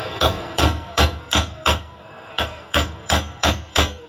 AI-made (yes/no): yes